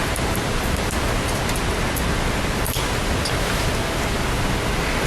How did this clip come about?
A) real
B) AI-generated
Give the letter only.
A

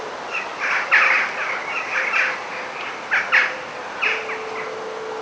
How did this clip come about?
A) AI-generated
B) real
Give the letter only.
B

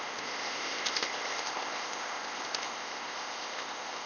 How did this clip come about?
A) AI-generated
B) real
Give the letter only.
A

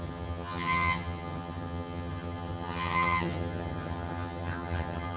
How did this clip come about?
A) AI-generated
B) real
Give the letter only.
A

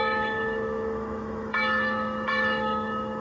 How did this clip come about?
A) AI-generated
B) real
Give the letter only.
A